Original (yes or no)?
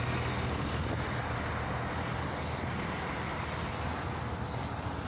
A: yes